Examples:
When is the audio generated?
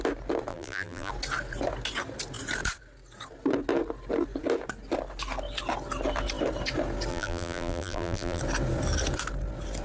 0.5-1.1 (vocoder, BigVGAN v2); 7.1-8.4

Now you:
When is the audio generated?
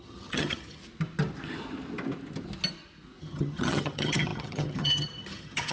0.0-0.8 (vocoder, HiFi-GAN); 3.2-5.7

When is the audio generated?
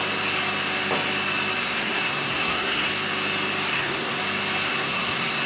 1.6-2.9 (codec, SNAC); 3.7-4.2; 4.7-5.5